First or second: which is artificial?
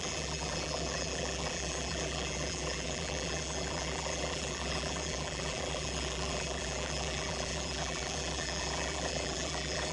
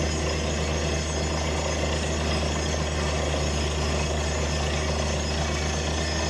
first